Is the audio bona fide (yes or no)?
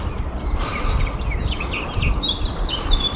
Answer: yes